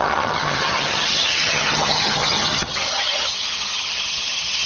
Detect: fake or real fake